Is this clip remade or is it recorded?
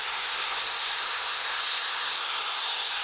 remade